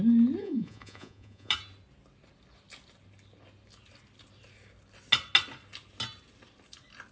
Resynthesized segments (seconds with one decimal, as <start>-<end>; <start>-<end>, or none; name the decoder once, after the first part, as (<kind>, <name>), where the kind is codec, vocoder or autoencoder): 0.4-1.5 (vocoder, Vocos)